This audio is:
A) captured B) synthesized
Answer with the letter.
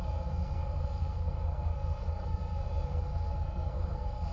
B